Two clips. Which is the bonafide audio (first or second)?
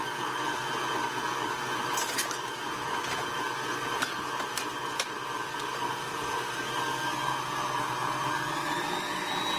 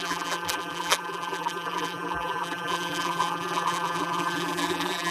first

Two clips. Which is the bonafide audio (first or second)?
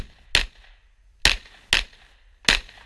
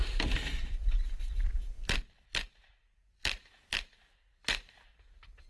first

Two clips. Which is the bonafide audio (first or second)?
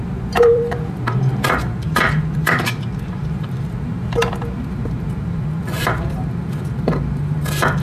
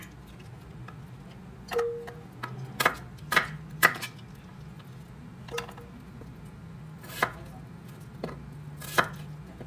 second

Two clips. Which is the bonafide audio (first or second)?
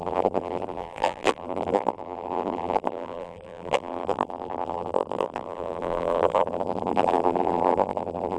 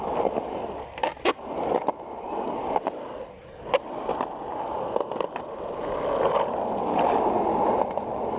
second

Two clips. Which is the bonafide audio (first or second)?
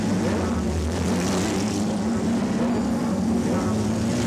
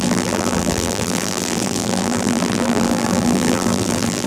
first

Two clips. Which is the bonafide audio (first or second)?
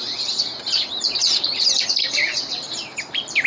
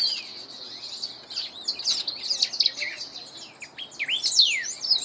second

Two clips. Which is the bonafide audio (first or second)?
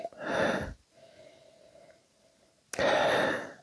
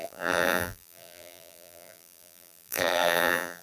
first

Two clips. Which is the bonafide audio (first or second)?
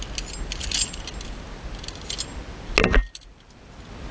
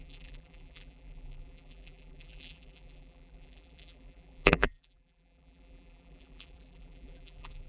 first